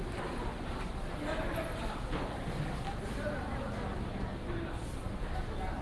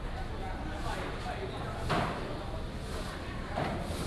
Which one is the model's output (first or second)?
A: second